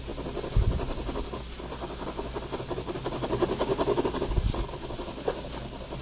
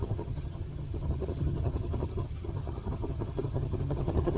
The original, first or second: first